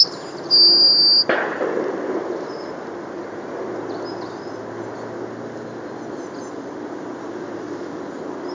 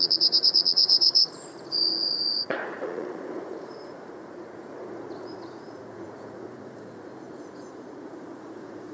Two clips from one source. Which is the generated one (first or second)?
second